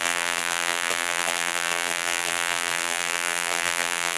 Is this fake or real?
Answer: fake